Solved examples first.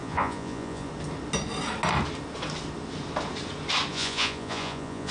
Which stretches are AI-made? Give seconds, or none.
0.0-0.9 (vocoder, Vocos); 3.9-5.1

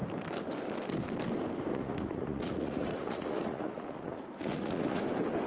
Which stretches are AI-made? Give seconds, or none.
1.7-5.0 (vocoder, Vocos)

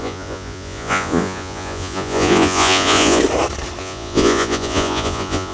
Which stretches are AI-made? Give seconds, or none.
0.0-3.2 (vocoder, Vocos); 3.8-5.5

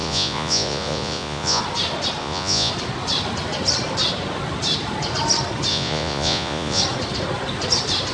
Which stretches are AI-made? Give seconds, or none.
0.0-1.6 (vocoder, Vocos); 2.2-2.7; 5.7-6.8